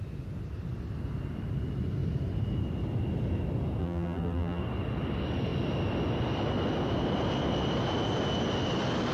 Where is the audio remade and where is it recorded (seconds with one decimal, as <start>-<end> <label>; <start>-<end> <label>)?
0.0-3.8 recorded; 3.8-4.6 remade; 4.6-9.1 recorded